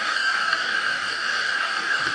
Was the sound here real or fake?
fake